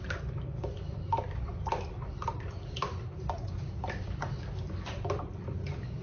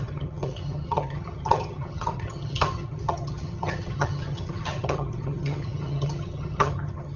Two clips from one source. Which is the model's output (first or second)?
second